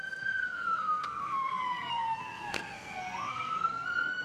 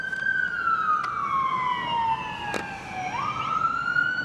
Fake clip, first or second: first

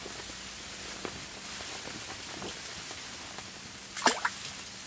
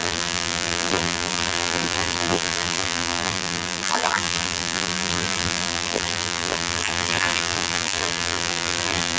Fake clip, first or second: second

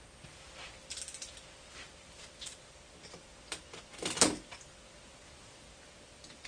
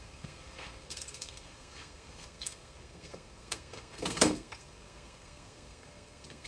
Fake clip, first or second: second